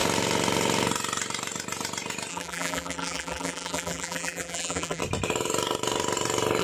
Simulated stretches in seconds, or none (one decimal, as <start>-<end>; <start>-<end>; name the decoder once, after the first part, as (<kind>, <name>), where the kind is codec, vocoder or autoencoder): 2.3-5.0 (vocoder, BigVGAN v2)